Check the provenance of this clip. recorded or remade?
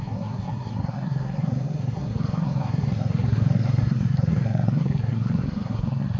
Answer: remade